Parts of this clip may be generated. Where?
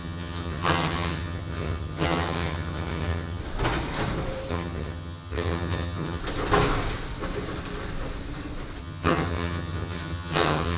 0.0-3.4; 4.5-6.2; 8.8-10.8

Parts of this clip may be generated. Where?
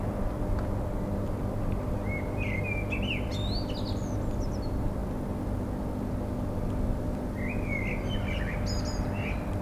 none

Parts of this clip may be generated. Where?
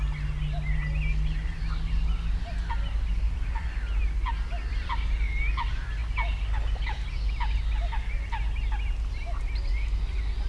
none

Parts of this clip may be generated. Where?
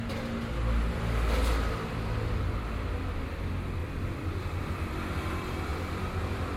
3.8-4.6; 5.7-6.6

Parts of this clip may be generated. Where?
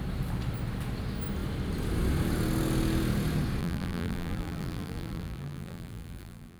3.6-6.6